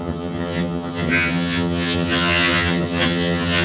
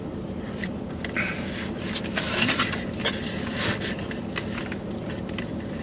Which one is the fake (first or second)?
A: first